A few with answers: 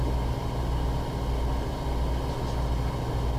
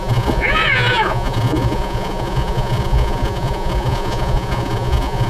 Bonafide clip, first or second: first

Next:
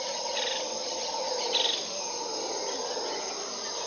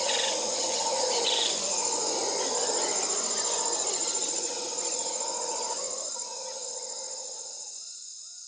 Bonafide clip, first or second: first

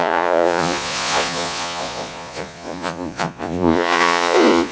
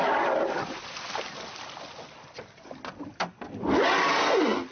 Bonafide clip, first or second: second